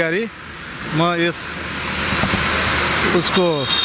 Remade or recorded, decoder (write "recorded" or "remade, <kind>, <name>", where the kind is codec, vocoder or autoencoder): recorded